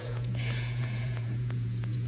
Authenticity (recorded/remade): remade